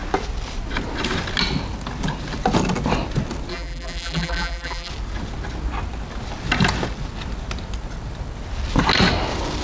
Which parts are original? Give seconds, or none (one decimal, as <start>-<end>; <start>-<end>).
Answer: 0.0-3.5; 4.9-9.6